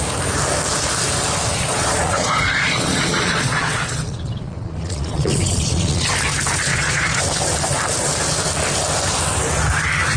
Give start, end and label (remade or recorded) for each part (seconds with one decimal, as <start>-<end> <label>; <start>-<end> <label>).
0.0-1.5 recorded; 1.5-6.1 remade; 6.1-6.7 recorded; 6.7-7.2 remade; 7.2-10.2 recorded